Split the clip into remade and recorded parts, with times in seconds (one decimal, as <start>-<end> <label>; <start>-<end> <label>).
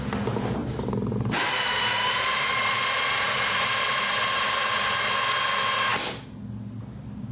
0.0-0.6 recorded; 0.6-5.0 remade; 5.0-7.3 recorded